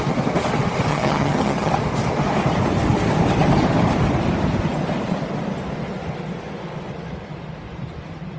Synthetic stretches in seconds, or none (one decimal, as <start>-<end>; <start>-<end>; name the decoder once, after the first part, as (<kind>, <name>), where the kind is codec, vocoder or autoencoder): 0.9-1.7 (vocoder, HiFi-GAN)

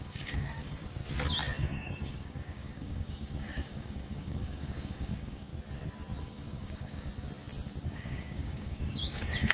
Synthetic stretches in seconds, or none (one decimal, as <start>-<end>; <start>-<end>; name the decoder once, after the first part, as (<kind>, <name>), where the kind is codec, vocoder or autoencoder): 0.0-1.0 (codec, DAC); 1.6-5.5; 6.2-7.1; 7.8-9.5

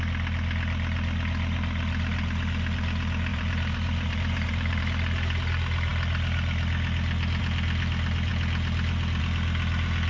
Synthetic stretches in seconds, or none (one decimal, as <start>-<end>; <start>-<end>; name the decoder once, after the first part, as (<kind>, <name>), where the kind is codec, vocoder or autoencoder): 3.3-4.8 (vocoder, BigVGAN v2)